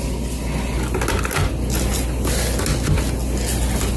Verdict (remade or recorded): recorded